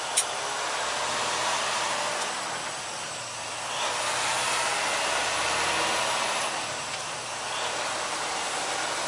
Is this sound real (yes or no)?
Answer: yes